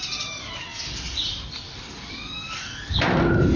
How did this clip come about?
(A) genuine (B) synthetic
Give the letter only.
A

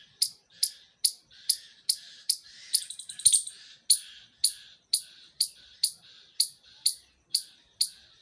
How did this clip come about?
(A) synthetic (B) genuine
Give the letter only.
B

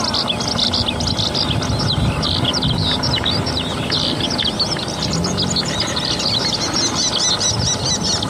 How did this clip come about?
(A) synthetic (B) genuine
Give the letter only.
B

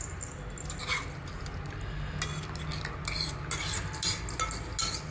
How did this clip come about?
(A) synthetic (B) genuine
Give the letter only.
B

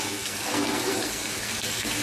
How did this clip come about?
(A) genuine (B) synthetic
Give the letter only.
B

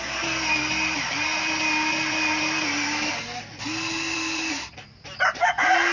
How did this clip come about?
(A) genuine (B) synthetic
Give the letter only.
A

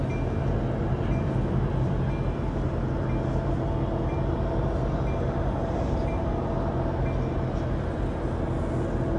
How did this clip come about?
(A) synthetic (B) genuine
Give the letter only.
B